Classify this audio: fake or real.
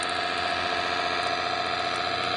real